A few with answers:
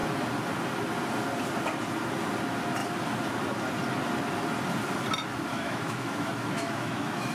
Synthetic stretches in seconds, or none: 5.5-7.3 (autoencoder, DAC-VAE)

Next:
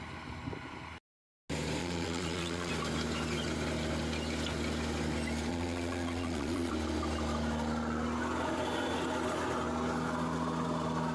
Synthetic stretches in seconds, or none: 1.8-2.7 (vocoder, Vocos); 5.5-6.7

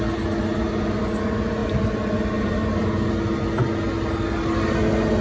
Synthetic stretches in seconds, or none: none

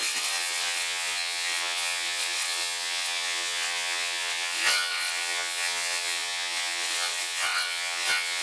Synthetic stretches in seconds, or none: 0.0-8.4 (vocoder, WaveNeXt)

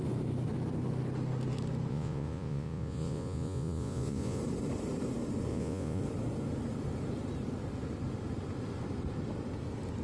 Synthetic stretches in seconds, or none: 1.9-4.4 (vocoder, Vocos); 5.5-6.0

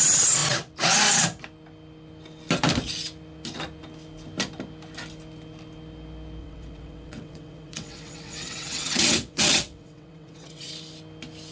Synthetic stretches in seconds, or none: 6.4-10.7 (vocoder, WaveNeXt)